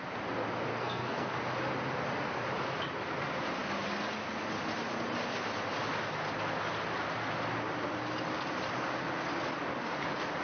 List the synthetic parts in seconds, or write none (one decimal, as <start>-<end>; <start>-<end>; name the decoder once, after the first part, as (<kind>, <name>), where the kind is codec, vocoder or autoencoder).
0.7-1.3 (codec, SNAC)